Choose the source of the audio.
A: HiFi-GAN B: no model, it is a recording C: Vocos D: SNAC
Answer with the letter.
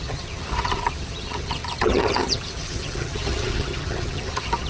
A